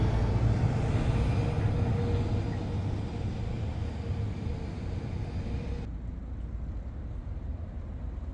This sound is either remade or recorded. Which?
recorded